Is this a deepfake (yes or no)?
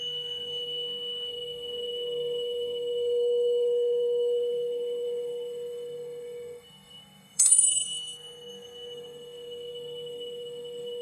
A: yes